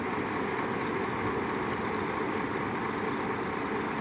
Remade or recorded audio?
recorded